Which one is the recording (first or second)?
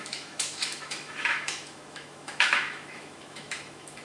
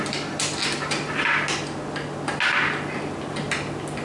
second